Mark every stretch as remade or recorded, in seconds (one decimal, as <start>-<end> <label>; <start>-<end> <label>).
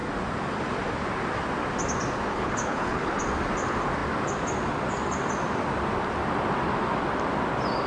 0.0-2.3 recorded; 2.3-3.2 remade; 3.2-7.9 recorded